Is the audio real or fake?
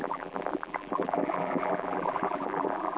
fake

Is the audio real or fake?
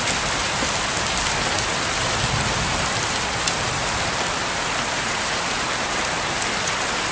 real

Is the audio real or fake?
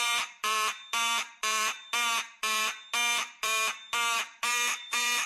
fake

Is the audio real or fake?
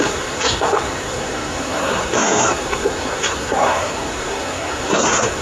fake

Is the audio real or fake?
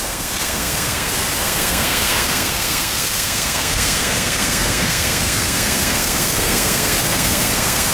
fake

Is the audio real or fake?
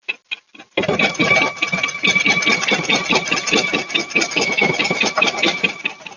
real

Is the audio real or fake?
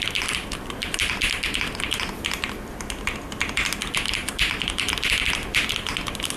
fake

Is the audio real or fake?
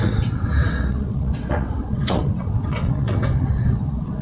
fake